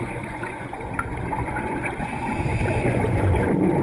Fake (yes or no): yes